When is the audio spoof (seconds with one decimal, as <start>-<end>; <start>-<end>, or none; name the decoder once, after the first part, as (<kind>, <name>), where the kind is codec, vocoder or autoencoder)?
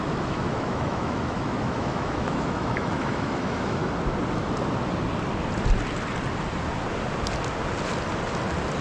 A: 0.0-3.8 (autoencoder, DAC-VAE)